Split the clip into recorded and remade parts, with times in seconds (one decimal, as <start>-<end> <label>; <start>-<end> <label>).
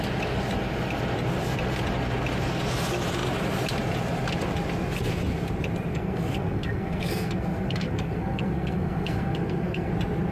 0.0-5.9 recorded; 5.9-9.9 remade; 9.9-10.3 recorded